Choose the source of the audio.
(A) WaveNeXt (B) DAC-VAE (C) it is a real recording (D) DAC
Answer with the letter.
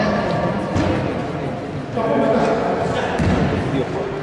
C